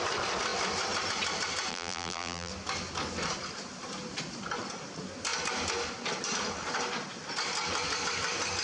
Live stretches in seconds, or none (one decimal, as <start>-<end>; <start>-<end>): 0.0-1.7; 2.5-8.6